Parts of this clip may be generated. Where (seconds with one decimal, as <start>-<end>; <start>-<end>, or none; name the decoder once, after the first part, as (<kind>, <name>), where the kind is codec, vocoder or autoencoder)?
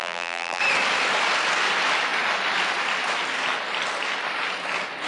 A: 0.0-0.6 (vocoder, BigVGAN v2)